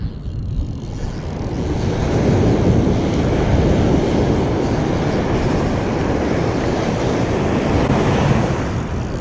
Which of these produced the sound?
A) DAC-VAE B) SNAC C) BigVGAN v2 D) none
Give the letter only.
D